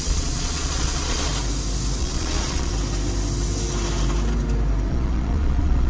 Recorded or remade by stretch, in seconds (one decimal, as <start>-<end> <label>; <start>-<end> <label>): 0.0-1.3 remade; 1.3-2.0 recorded; 2.0-2.7 remade; 2.7-4.9 recorded; 4.9-5.9 remade